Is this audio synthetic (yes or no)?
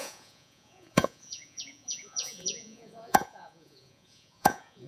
yes